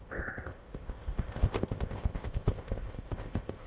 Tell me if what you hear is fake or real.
fake